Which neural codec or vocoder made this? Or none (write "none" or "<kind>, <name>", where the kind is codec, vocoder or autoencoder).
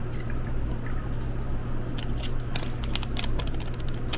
none